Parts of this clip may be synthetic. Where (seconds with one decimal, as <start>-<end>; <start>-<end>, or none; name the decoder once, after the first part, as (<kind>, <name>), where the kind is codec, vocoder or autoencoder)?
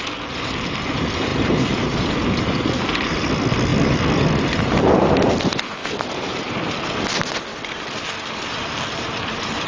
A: 5.8-6.7 (vocoder, BigVGAN v2); 7.5-8.0